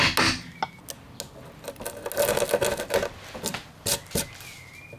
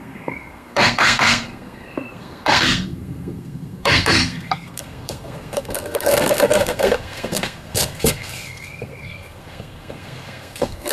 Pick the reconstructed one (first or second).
second